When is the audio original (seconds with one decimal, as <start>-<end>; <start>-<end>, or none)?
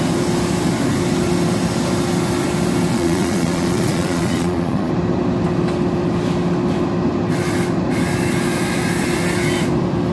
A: 0.0-2.9; 4.9-10.1